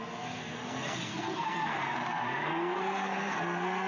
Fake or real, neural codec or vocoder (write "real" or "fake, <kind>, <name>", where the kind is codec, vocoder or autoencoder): fake, codec, SNAC